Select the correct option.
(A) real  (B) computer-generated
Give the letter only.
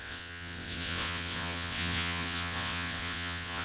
B